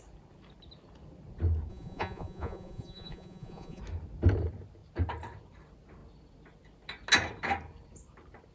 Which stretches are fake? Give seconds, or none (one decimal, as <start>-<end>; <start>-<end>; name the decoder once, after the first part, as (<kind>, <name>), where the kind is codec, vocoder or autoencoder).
1.7-3.8 (vocoder, Vocos)